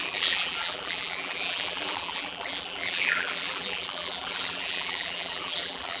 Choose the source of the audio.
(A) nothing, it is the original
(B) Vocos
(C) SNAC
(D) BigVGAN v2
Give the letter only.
D